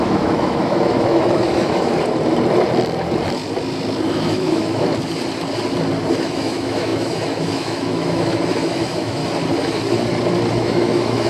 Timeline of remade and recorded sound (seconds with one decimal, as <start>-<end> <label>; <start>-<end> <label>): 0.0-1.9 remade; 1.9-4.1 recorded; 4.1-4.9 remade; 4.9-6.2 recorded; 6.2-9.2 remade; 9.2-10.5 recorded; 10.5-11.3 remade